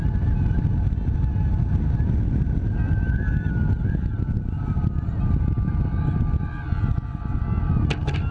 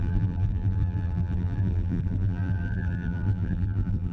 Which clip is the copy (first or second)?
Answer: second